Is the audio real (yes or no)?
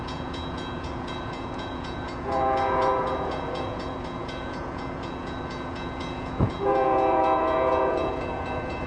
no